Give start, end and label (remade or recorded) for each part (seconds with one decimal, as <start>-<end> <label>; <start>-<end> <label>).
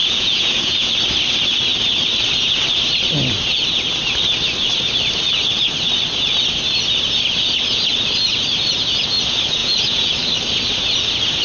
0.0-0.9 remade; 0.9-9.6 recorded; 9.6-10.1 remade; 10.1-11.4 recorded